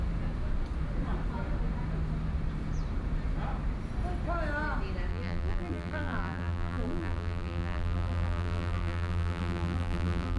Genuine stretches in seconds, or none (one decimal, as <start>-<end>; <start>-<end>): 0.0-5.1